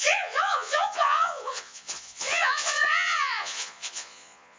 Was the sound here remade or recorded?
remade